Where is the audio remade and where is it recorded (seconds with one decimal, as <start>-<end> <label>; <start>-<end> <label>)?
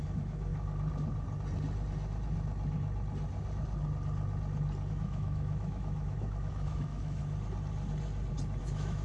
0.0-0.5 remade; 0.5-4.9 recorded; 4.9-7.2 remade; 7.2-8.6 recorded; 8.6-9.0 remade